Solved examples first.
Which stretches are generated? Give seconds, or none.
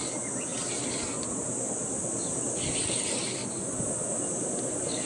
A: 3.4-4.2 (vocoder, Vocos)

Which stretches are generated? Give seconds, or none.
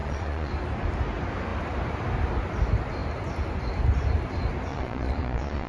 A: 0.0-0.5 (vocoder, Vocos); 4.7-5.7